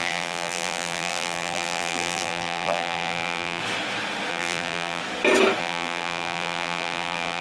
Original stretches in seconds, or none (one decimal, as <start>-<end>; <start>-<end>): 3.6-4.3; 5.0-5.6